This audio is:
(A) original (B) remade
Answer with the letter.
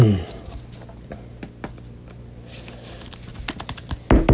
A